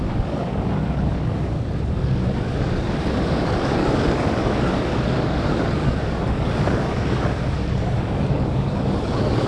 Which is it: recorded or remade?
remade